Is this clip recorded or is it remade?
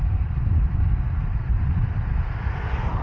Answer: recorded